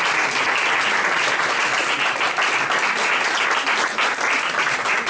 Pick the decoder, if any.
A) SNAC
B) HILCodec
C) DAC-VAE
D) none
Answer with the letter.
D